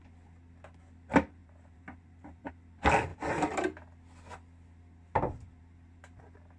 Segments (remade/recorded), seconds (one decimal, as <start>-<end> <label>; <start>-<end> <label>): 0.0-1.4 recorded; 1.4-2.5 remade; 2.5-6.6 recorded